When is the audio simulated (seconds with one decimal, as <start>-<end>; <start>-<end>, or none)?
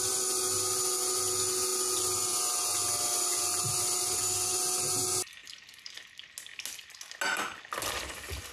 none